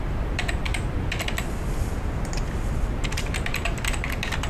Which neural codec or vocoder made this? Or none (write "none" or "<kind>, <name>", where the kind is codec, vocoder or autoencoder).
none